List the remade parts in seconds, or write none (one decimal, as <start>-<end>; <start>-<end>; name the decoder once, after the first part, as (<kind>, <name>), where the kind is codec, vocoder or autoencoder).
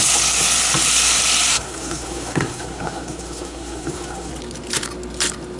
1.5-4.3 (codec, SNAC)